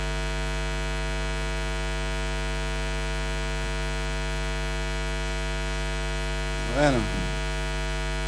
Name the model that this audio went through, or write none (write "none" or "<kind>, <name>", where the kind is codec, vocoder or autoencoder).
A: none